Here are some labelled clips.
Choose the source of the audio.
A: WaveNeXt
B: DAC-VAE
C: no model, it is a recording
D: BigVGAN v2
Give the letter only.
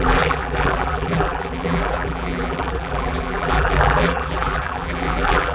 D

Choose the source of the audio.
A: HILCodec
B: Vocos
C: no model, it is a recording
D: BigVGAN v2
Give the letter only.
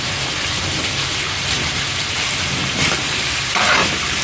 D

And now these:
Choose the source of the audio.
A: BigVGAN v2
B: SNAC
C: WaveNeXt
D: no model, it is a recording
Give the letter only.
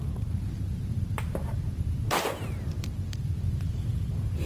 A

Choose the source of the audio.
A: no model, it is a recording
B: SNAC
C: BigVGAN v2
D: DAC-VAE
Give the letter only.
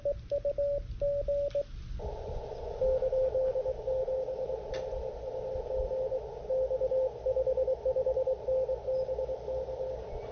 A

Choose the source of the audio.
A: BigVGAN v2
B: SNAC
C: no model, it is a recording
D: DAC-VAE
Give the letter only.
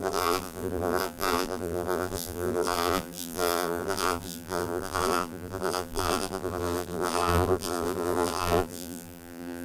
A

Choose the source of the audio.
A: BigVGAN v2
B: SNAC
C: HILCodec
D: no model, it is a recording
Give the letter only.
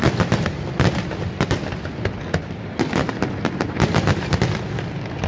D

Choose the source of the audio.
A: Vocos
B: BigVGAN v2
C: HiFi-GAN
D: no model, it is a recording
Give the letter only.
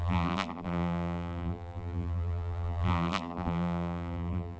B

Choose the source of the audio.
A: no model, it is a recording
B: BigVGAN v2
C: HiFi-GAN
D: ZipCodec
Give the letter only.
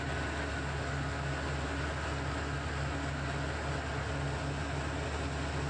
A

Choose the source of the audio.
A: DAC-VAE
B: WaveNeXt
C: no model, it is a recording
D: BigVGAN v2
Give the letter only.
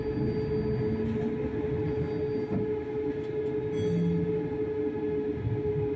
C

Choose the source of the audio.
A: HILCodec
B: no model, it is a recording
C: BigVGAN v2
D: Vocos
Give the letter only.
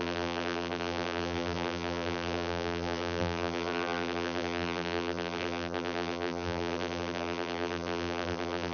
C